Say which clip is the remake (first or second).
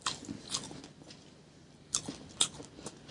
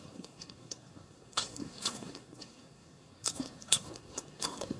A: second